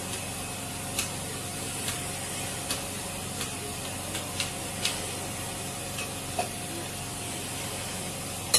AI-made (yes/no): no